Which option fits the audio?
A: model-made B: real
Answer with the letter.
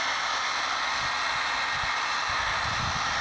B